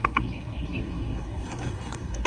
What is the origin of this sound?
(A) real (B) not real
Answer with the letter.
B